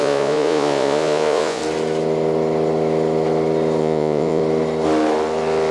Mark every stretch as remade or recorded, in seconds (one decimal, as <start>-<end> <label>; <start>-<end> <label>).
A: 0.0-1.6 remade; 1.6-3.8 recorded; 3.8-4.4 remade; 4.4-5.7 recorded